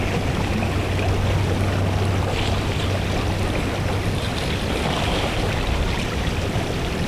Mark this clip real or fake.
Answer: real